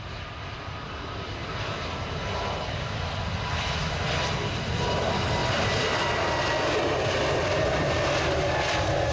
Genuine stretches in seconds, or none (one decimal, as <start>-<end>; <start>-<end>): 0.0-5.4; 6.0-9.1